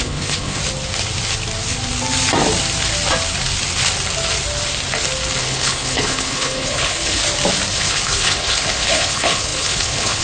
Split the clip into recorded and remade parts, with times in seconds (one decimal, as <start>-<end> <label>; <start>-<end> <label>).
0.0-0.6 remade; 0.6-5.4 recorded; 5.4-7.2 remade; 7.2-7.7 recorded; 7.7-10.2 remade